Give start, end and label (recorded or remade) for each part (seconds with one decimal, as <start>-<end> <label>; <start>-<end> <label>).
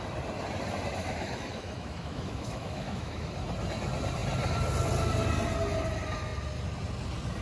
0.0-1.0 recorded; 1.0-3.3 remade; 3.3-7.4 recorded